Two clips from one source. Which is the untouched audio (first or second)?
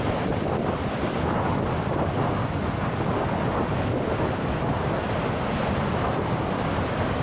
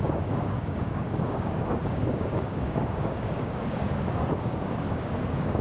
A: first